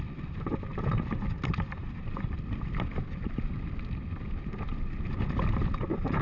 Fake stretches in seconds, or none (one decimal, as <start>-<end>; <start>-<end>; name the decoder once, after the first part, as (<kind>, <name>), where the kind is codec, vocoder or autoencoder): none